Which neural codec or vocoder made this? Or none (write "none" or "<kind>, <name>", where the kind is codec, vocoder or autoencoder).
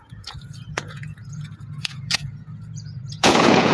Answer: vocoder, Vocos